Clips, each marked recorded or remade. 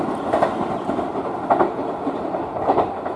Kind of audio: recorded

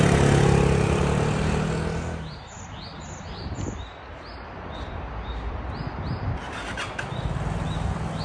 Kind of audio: recorded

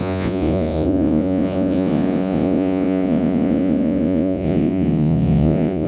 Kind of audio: remade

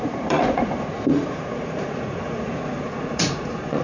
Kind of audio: remade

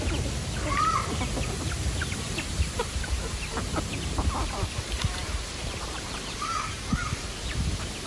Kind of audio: recorded